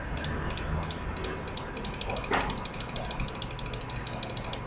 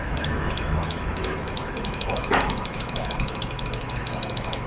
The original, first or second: first